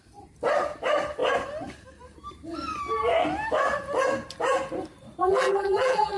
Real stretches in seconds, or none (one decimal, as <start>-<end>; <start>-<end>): 0.0-5.2